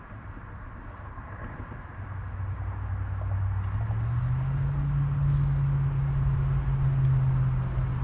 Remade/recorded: recorded